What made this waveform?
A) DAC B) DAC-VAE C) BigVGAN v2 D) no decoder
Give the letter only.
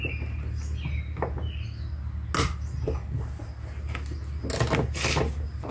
D